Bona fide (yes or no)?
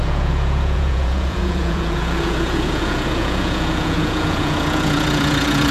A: no